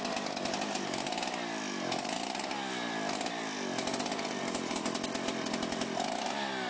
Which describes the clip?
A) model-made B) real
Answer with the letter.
B